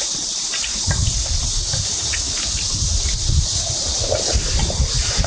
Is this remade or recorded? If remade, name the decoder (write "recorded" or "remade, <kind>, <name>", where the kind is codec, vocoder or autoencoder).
recorded